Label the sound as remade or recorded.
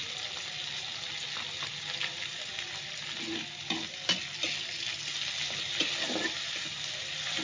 recorded